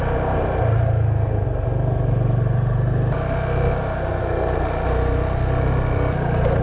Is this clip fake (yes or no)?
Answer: no